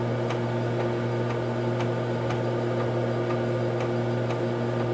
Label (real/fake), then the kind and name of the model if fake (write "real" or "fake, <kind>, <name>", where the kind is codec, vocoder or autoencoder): real